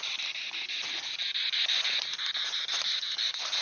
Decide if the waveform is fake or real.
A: real